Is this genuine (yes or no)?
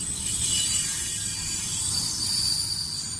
yes